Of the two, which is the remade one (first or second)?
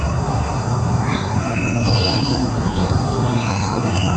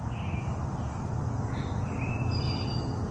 first